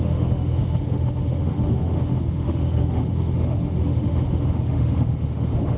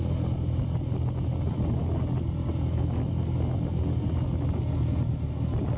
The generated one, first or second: first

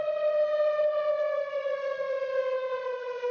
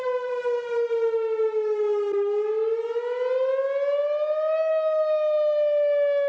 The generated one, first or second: first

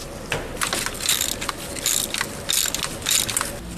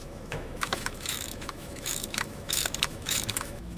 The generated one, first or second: second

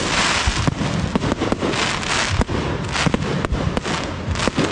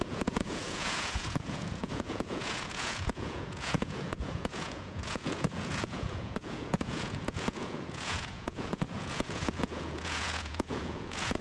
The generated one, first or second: second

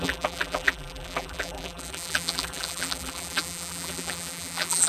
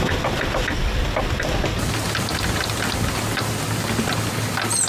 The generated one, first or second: first